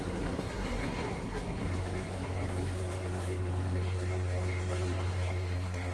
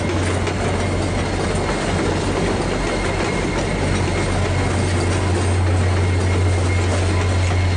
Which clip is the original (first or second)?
second